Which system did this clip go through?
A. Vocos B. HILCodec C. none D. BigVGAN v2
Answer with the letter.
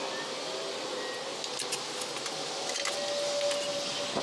C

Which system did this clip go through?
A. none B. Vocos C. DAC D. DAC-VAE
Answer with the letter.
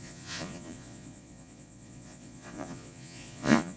B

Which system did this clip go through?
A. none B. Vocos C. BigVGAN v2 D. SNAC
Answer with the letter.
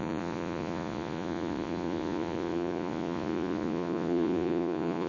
B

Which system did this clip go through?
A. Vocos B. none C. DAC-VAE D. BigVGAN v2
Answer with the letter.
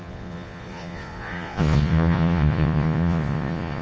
A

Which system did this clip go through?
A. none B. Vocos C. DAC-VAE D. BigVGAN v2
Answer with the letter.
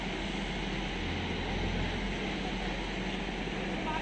A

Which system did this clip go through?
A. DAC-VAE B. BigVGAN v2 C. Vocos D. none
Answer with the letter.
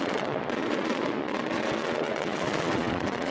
C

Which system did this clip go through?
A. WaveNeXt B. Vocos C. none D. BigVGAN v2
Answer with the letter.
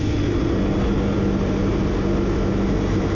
C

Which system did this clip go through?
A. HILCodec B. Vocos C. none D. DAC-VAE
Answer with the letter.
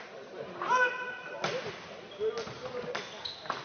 C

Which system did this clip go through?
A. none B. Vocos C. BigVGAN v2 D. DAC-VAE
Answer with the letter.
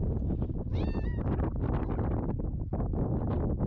A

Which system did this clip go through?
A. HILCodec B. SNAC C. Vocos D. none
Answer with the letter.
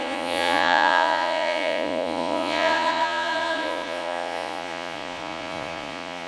C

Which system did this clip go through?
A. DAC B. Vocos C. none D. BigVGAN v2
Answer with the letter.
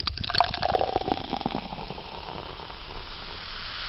C